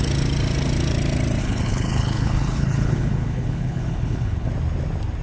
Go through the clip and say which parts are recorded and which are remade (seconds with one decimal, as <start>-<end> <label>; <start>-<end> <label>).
0.0-1.4 recorded; 1.4-4.5 remade; 4.5-5.2 recorded